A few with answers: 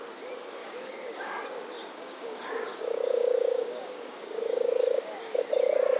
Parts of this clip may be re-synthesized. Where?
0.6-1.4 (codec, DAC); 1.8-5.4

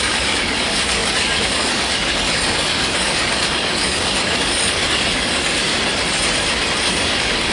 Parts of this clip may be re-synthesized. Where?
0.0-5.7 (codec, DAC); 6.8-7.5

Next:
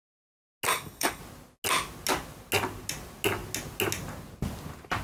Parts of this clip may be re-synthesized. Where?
0.7-1.2 (codec, DAC)

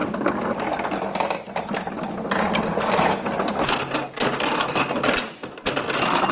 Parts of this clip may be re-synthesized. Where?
none